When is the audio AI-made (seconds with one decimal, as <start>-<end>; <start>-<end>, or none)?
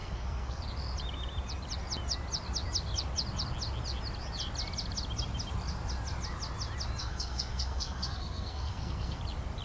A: 0.0-0.6; 7.0-9.2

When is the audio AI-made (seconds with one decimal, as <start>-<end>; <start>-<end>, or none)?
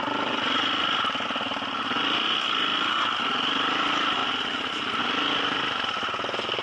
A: 4.2-5.0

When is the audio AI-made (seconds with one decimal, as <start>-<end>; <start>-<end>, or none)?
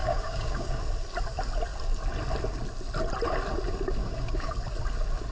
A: 0.0-0.8; 4.0-4.5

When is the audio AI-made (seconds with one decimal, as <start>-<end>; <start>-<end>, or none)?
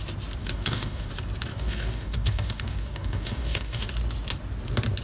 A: 0.4-1.1; 1.5-3.9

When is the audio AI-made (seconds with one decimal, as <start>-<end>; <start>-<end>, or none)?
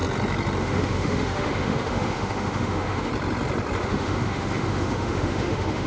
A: 0.6-3.1; 3.8-5.9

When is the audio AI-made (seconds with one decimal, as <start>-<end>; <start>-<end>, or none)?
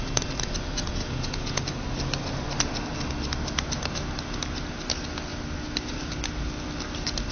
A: 0.9-1.6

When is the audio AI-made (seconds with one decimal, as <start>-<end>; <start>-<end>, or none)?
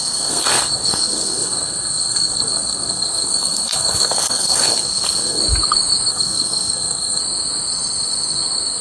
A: 0.0-5.4; 6.1-7.2